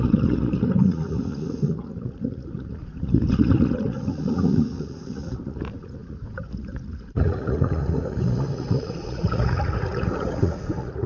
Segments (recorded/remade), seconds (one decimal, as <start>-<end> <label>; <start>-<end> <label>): 0.0-11.1 remade